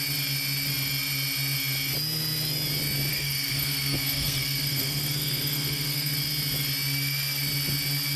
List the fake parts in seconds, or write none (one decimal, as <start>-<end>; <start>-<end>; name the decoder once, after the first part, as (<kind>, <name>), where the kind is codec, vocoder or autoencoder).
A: 3.1-6.1 (codec, SNAC)